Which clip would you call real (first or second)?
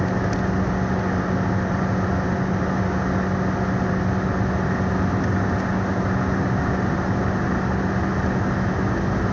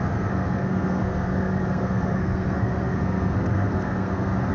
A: first